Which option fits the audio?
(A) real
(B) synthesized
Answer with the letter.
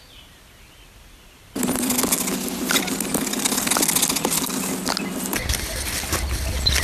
A